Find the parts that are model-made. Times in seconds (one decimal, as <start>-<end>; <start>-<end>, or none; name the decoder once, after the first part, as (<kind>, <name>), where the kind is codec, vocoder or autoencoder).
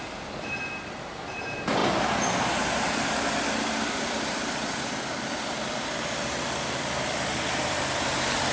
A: none